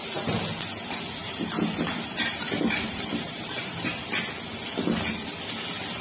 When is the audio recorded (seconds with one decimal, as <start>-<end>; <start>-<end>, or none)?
0.0-1.2; 3.9-6.0